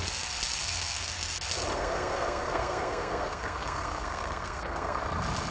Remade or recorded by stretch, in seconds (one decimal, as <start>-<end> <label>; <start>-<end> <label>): 0.0-0.6 recorded; 0.6-1.1 remade; 1.1-1.7 recorded; 1.7-5.0 remade; 5.0-5.5 recorded